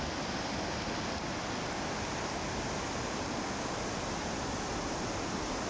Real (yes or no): yes